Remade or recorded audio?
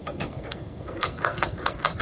remade